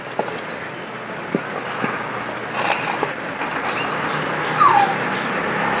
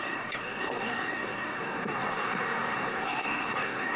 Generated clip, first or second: second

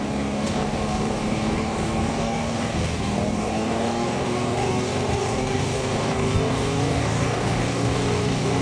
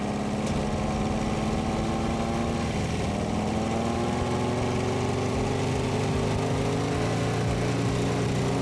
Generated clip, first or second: first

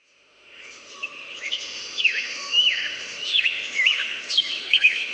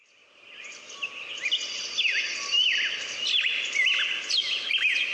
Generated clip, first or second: first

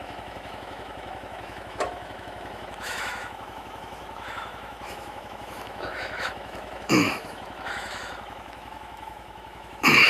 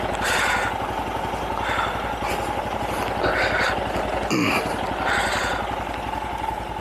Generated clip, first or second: first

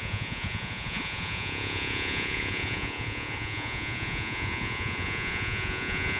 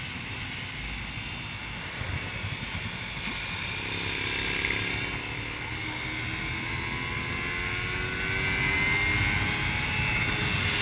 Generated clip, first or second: first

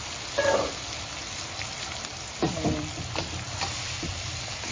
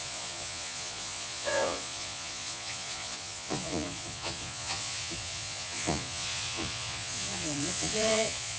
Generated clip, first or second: second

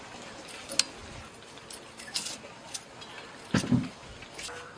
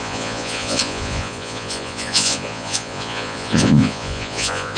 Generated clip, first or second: second